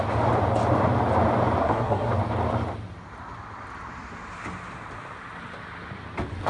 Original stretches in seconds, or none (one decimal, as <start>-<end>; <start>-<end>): 0.0-1.6; 2.1-6.5